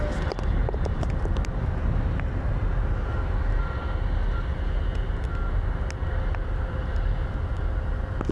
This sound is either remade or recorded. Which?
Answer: recorded